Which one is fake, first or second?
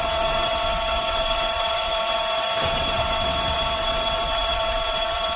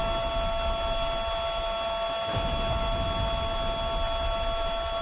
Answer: first